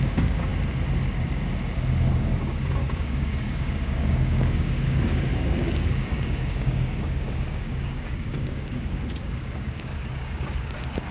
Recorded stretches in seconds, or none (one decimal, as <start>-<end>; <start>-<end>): 0.5-2.1